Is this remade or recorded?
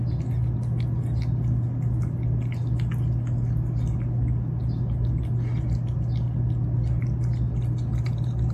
recorded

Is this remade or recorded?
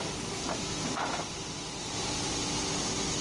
recorded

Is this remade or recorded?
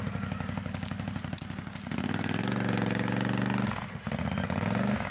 recorded